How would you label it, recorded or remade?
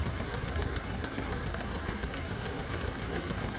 remade